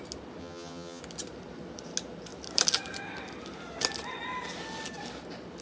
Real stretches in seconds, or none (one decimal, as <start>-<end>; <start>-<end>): 0.0-0.4; 1.0-5.6